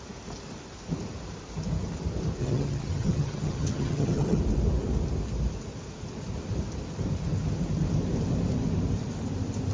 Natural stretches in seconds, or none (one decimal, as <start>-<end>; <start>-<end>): 0.0-2.4; 4.4-9.7